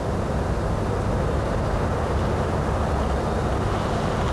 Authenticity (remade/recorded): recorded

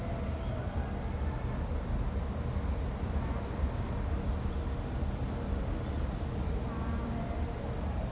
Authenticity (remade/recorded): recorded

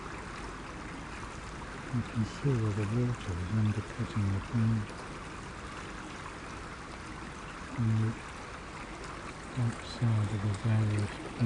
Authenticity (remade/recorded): recorded